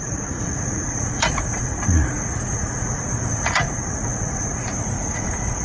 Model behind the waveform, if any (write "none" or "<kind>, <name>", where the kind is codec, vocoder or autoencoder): vocoder, Vocos